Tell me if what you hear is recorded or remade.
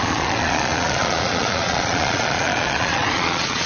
remade